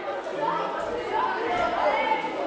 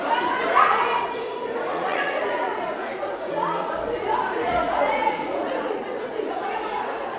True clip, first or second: first